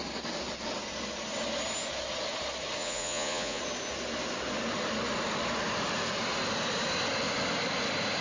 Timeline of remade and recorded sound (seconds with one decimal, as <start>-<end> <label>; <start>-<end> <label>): 0.0-2.8 recorded; 2.8-3.6 remade; 3.6-8.2 recorded